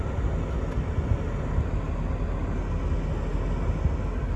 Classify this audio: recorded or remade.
recorded